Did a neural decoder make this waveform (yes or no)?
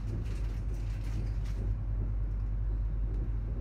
no